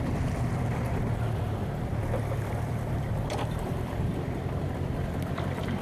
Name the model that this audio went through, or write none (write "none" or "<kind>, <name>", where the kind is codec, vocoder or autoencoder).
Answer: none